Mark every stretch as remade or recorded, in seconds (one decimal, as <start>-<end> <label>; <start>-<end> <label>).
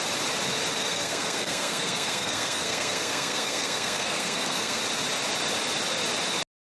0.0-0.8 recorded; 0.8-4.8 remade; 4.8-6.6 recorded